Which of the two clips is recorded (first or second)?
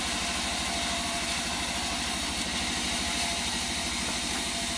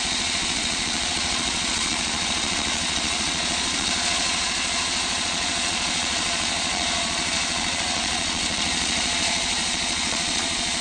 first